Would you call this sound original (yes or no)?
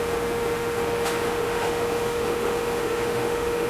no